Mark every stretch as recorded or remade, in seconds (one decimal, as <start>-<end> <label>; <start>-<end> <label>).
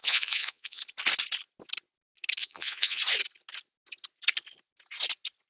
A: 0.0-0.8 remade; 0.8-2.4 recorded; 2.4-3.0 remade; 3.0-5.5 recorded